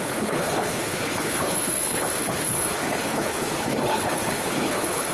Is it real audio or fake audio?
fake